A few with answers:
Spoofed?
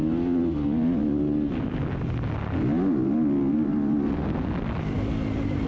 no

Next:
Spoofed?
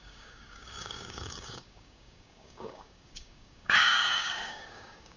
yes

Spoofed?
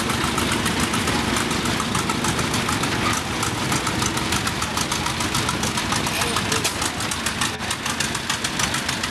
no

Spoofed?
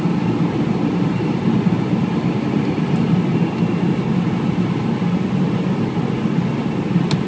no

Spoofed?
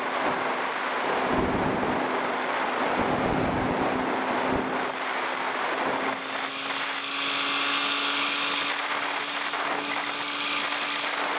no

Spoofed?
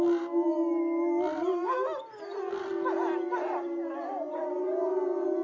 no